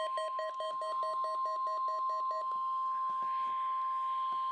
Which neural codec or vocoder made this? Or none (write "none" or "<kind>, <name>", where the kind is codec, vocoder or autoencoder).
none